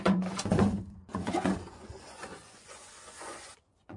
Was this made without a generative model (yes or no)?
no